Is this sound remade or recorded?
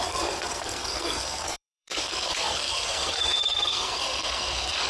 remade